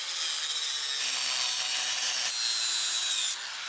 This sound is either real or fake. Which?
real